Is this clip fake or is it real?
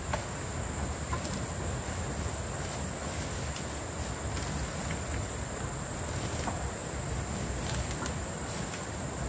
real